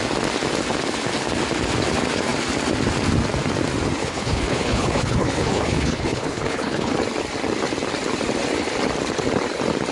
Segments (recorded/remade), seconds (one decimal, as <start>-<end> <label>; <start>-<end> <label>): 0.0-4.0 recorded; 4.0-6.9 remade; 6.9-9.9 recorded